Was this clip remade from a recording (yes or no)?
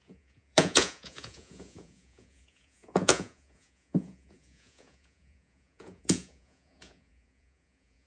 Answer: yes